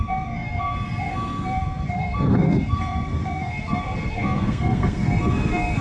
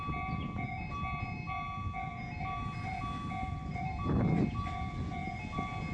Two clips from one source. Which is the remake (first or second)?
first